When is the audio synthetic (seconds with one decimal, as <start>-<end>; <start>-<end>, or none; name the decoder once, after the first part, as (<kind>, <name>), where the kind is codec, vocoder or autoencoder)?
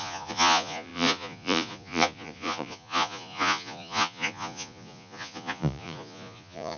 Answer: 0.0-6.8 (vocoder, Vocos)